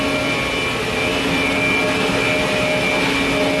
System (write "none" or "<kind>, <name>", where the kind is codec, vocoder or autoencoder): none